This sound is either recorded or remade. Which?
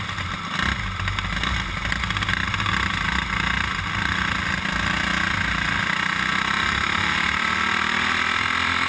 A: recorded